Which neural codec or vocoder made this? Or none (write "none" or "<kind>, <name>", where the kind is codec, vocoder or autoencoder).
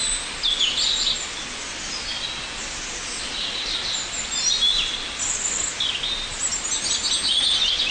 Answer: none